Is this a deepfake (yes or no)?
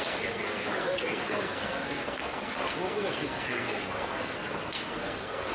yes